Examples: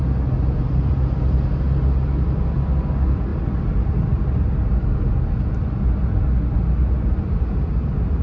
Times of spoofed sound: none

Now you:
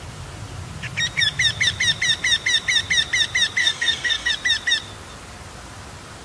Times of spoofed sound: 3.6-4.3 (codec, SNAC)

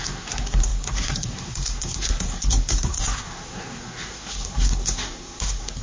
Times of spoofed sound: 0.0-5.8 (codec, SNAC)

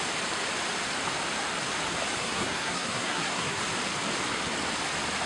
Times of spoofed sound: 2.2-3.6 (codec, SNAC)

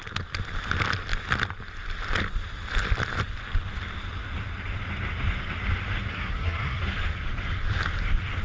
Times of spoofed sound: 6.1-6.8 (codec, SNAC)

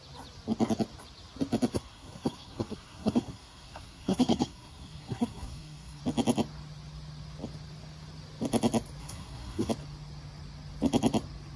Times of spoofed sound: 1.7-6.0 (codec, SNAC); 9.0-9.7

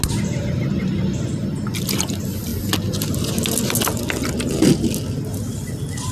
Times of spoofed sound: none

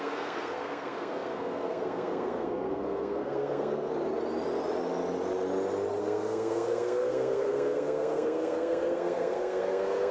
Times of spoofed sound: 0.0-3.9 (codec, SNAC); 6.0-10.1